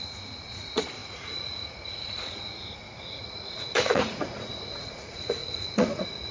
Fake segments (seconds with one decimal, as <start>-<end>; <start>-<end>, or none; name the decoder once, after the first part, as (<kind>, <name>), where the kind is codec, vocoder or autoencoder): 0.0-6.3 (vocoder, Vocos)